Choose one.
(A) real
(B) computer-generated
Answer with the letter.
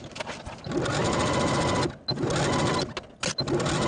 A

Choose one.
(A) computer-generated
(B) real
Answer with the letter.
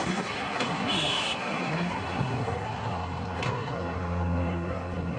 A